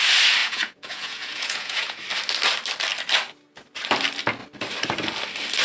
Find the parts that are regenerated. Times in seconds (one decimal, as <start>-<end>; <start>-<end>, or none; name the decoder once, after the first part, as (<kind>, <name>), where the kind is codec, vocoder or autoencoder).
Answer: 0.4-2.0 (vocoder, Vocos)